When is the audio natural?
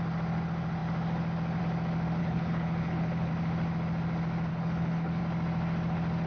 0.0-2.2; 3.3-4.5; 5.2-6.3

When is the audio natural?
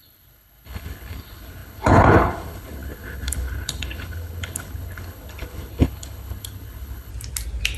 7.1-7.8